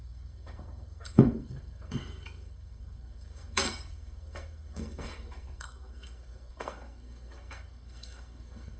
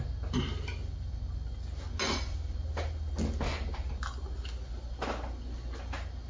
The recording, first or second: second